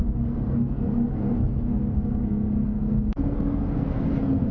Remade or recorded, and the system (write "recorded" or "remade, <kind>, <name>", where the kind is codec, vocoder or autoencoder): remade, codec, SNAC